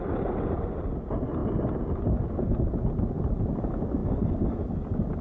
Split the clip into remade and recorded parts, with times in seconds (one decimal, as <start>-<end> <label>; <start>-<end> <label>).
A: 0.0-5.2 recorded